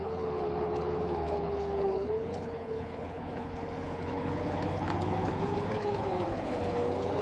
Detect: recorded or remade remade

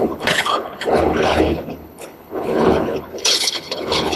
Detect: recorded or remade remade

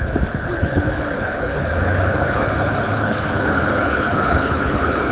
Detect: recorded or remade remade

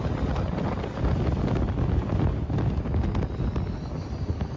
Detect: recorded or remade recorded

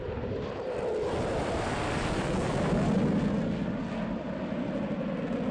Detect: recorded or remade recorded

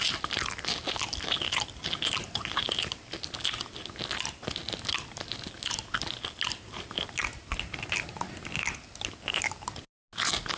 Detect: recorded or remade recorded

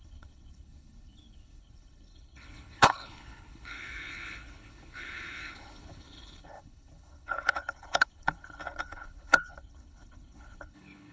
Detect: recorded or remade remade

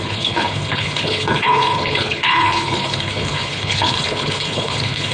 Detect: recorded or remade remade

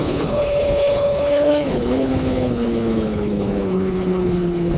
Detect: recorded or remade remade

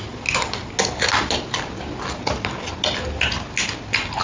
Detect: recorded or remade recorded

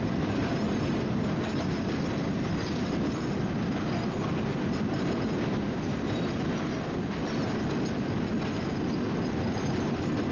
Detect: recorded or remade recorded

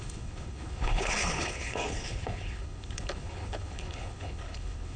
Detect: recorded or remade remade